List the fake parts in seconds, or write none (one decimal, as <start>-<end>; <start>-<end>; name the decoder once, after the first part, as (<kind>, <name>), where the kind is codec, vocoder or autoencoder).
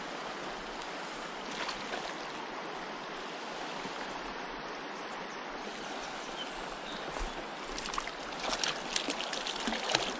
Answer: none